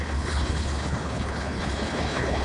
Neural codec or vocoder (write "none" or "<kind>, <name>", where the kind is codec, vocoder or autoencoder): codec, HILCodec